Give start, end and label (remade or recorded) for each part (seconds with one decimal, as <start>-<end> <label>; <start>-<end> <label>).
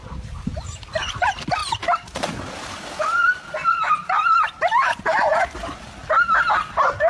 0.0-1.2 remade; 1.2-1.6 recorded; 1.6-2.4 remade; 2.4-3.6 recorded; 3.6-5.5 remade; 5.5-7.1 recorded